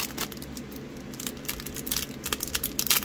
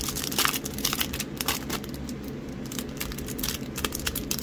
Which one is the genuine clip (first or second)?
first